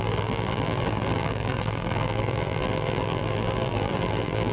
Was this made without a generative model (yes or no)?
no